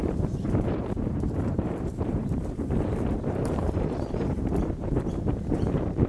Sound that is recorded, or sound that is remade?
remade